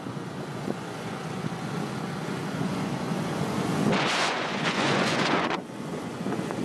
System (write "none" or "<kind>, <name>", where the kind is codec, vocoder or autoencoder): vocoder, Vocos